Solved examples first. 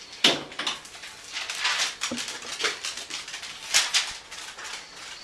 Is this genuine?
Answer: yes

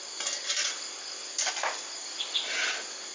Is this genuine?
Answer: yes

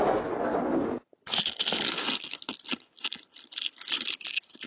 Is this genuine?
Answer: yes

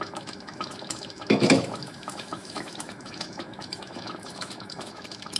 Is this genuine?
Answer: no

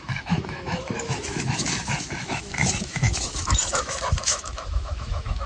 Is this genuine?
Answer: no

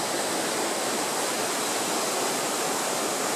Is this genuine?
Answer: yes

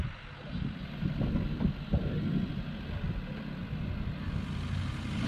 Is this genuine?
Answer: yes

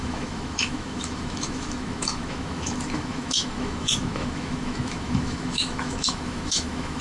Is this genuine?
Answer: no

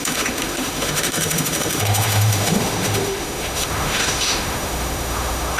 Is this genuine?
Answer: no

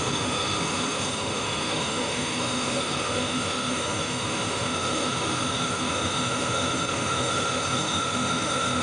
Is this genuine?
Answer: no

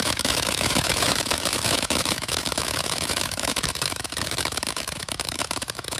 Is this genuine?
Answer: no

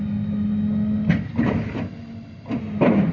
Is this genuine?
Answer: yes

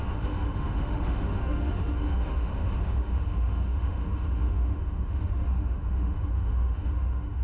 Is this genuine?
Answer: no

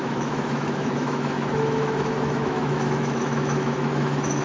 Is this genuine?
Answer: no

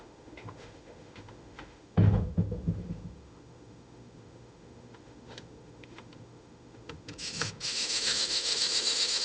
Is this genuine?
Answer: no